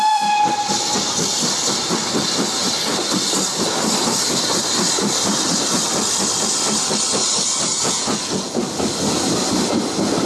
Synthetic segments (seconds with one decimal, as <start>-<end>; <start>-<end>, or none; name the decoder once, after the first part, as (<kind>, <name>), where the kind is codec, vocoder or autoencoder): 7.7-8.6 (vocoder, Vocos)